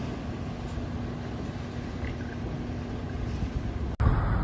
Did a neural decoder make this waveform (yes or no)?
no